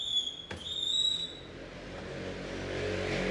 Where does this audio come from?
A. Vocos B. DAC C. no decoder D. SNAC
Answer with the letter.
C